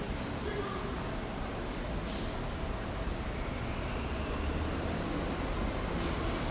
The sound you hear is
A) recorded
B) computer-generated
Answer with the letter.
A